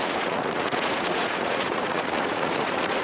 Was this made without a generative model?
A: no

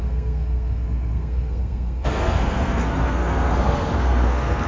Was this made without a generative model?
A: no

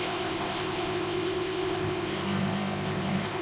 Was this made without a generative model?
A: no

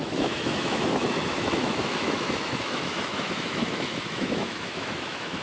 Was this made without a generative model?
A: no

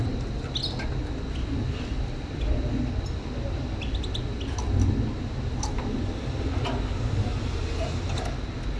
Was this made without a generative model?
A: yes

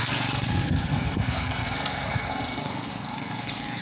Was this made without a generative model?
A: no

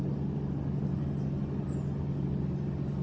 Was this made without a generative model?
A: yes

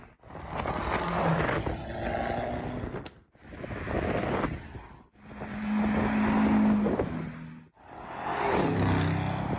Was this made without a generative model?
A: yes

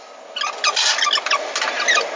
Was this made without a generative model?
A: yes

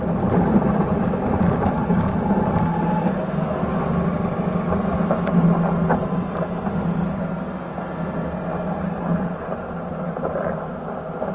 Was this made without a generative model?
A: yes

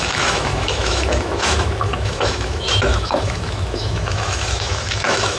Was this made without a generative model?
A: no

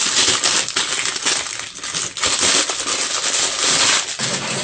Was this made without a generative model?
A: yes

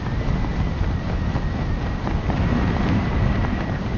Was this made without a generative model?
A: yes